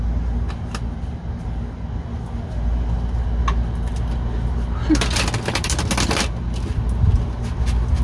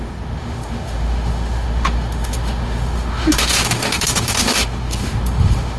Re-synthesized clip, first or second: second